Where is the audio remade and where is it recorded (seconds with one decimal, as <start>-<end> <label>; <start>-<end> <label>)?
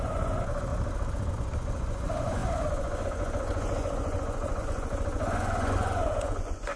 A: 0.0-0.7 remade; 0.7-1.3 recorded; 1.3-6.8 remade